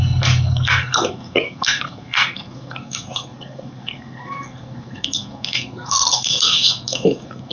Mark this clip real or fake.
fake